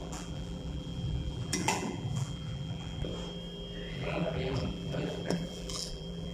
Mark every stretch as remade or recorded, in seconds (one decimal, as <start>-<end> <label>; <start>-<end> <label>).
0.0-3.1 remade; 3.1-3.9 recorded; 3.9-6.3 remade